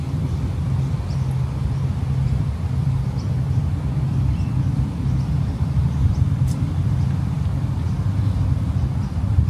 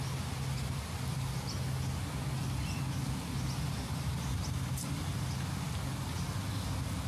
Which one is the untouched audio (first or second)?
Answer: second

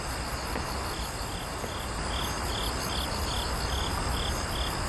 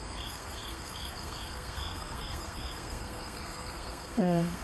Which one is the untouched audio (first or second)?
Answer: first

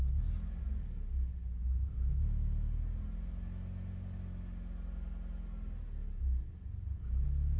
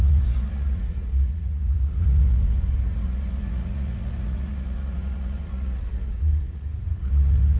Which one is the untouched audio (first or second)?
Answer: first